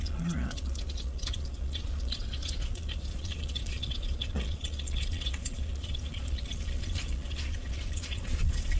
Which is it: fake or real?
fake